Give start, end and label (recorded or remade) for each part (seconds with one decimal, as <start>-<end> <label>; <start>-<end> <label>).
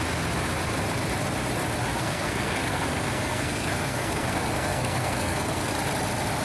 0.0-1.9 recorded; 1.9-5.7 remade; 5.7-6.4 recorded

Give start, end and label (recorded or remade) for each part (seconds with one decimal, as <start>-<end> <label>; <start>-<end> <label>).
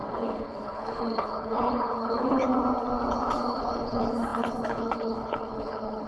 0.0-2.5 remade; 2.5-3.1 recorded; 3.1-6.1 remade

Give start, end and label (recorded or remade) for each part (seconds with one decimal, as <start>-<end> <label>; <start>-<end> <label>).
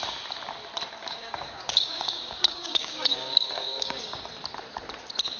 0.0-1.0 recorded; 1.0-4.2 remade; 4.2-5.4 recorded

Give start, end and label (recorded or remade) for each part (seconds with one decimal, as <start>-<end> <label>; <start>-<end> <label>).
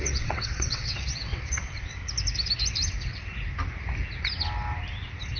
0.0-2.0 remade; 2.0-5.4 recorded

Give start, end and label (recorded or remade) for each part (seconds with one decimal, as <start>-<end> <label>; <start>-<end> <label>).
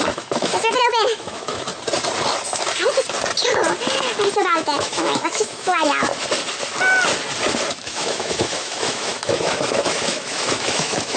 0.0-1.7 remade; 1.7-4.4 recorded; 4.4-6.1 remade; 6.1-7.7 recorded; 7.7-11.2 remade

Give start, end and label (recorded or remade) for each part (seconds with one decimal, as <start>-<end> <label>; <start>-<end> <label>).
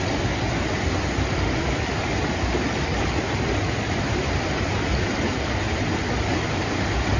0.0-7.2 recorded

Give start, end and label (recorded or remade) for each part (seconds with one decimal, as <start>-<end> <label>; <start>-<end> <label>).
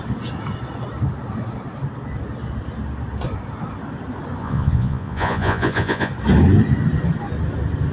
0.0-4.4 recorded; 4.4-6.1 remade; 6.1-7.9 recorded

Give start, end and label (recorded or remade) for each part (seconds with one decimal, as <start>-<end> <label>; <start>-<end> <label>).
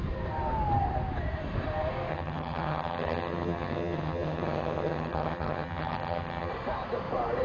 0.0-2.1 recorded; 2.1-6.5 remade; 6.5-7.4 recorded